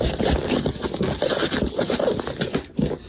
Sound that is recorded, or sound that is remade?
recorded